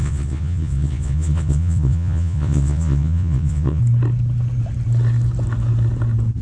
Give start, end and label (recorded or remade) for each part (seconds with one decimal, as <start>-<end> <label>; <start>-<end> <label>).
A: 0.0-3.8 remade; 3.8-6.4 recorded